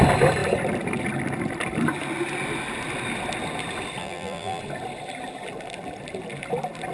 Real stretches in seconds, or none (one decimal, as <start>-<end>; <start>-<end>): 0.0-4.0; 4.6-6.9